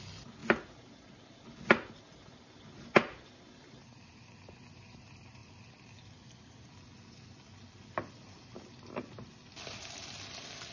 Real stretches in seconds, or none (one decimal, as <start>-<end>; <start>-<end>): 0.0-10.7